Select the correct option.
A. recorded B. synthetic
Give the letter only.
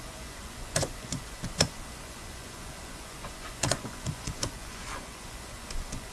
B